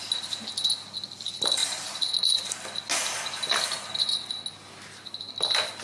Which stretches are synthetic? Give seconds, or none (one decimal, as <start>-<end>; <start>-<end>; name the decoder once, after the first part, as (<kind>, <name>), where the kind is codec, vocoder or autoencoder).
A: 1.6-2.1 (vocoder, BigVGAN v2)